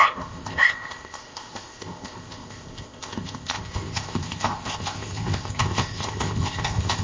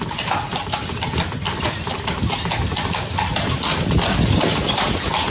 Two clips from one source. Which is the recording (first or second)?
second